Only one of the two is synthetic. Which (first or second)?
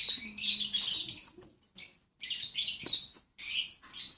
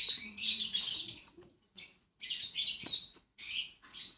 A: second